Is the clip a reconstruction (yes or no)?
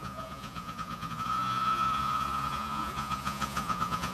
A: yes